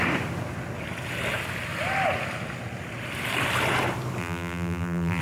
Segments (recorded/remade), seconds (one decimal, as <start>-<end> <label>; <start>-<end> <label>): 0.0-4.2 recorded; 4.2-5.2 remade